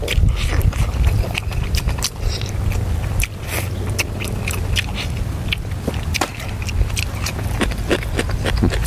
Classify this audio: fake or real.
real